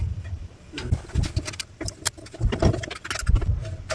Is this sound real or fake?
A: real